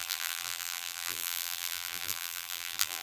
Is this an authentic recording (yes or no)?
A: no